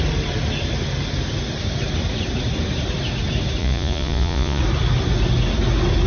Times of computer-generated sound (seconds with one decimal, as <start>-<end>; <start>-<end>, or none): 3.6-4.6